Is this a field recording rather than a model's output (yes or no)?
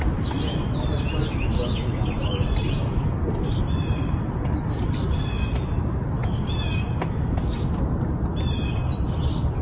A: yes